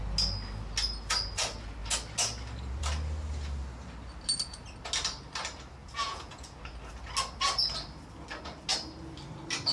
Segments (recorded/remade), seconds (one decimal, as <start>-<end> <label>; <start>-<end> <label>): 0.0-5.8 recorded; 5.8-6.6 remade; 6.6-9.7 recorded